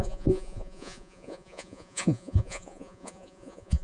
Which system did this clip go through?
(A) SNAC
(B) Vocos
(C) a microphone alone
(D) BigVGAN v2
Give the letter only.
B